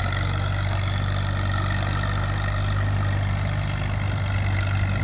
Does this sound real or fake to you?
real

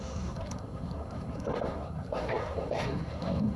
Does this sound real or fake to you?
fake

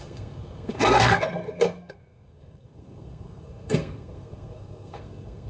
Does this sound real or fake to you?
fake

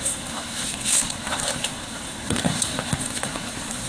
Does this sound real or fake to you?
fake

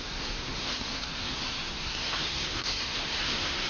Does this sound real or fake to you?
fake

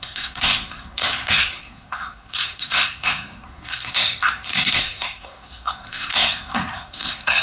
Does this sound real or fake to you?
fake